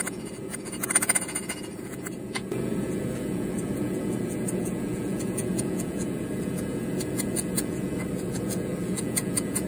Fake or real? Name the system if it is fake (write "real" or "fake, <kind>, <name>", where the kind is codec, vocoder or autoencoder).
fake, vocoder, Vocos